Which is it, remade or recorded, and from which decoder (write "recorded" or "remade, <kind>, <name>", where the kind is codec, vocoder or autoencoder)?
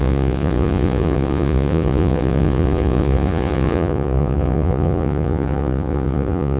remade, vocoder, Vocos